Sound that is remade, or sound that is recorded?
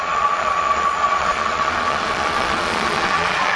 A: remade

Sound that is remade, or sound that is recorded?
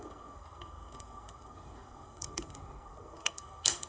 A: remade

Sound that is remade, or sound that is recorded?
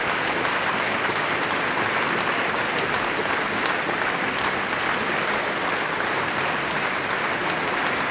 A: recorded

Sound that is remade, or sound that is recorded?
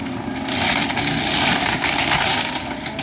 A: recorded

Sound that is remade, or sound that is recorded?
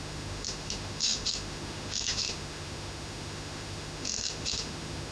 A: remade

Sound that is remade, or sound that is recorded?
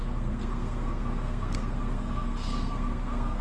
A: remade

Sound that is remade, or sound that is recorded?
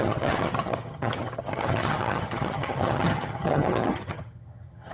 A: remade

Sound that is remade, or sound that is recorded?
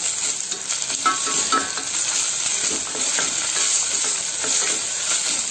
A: recorded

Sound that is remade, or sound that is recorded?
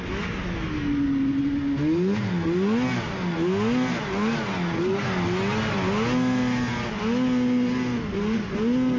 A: recorded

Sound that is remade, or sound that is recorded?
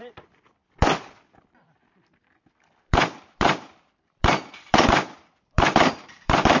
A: remade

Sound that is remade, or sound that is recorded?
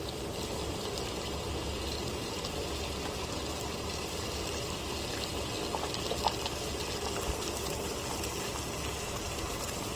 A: recorded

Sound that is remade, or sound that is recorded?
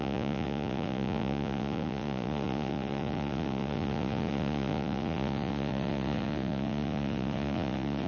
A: remade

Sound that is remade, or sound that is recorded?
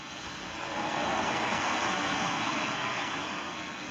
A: remade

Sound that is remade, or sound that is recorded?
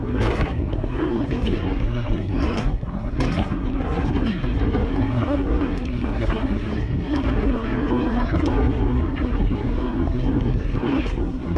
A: remade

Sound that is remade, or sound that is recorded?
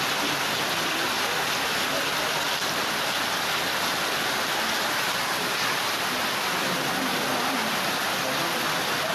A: recorded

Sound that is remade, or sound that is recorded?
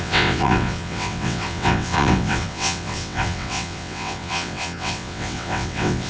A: remade